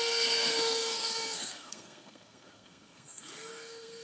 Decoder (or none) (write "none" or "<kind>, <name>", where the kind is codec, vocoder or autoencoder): codec, SNAC